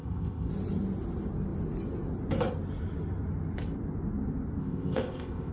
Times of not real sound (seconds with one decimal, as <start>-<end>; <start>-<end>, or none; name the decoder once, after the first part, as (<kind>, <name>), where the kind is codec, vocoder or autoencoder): 0.0-0.5 (codec, ZipCodec); 4.6-5.5